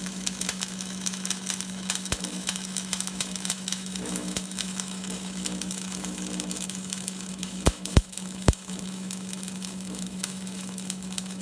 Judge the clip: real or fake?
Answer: fake